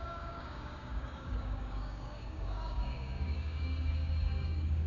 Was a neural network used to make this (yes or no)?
yes